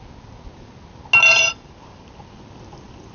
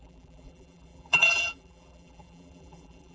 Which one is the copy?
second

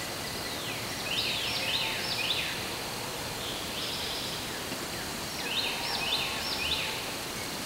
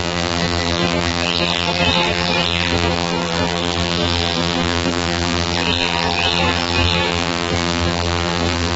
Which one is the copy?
second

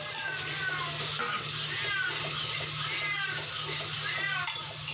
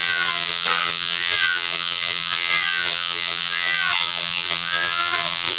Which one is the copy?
second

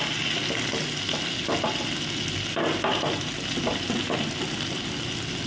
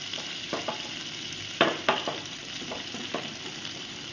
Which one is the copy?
second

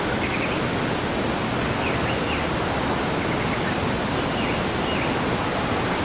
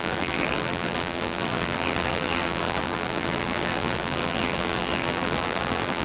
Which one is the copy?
second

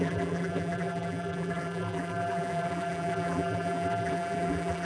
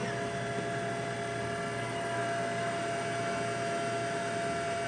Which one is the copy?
first